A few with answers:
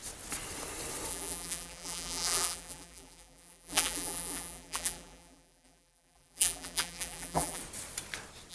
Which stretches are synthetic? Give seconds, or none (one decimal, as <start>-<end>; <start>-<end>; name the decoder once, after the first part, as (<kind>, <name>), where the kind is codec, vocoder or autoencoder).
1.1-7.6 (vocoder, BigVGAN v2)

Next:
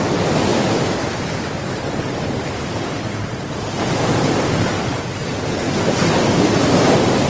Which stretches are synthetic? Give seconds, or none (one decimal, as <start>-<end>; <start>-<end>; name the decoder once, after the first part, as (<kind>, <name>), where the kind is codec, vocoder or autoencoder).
0.5-4.9 (vocoder, BigVGAN v2); 6.6-7.3

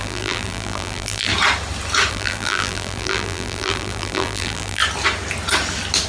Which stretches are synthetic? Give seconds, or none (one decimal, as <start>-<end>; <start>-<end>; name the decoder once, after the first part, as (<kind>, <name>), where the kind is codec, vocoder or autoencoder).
0.0-1.3 (vocoder, BigVGAN v2); 2.1-4.8